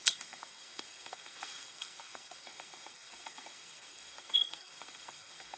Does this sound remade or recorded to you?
remade